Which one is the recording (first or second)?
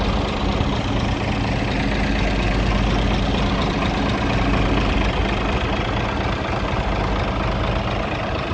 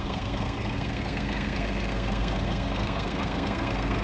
first